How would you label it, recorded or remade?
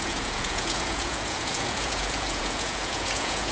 remade